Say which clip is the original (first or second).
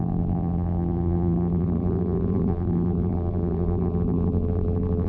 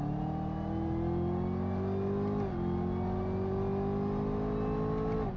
second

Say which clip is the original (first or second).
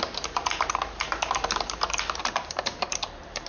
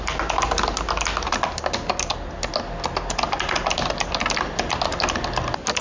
second